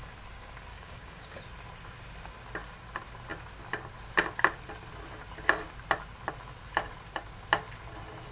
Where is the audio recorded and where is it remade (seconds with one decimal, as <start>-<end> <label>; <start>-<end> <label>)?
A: 0.0-0.7 recorded; 0.7-1.4 remade; 1.4-8.3 recorded